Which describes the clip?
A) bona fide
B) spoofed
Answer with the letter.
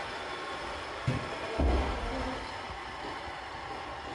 A